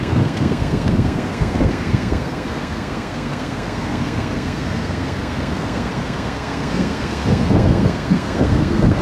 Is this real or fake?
fake